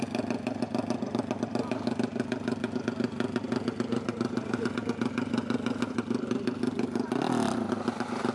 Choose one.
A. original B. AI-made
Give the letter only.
A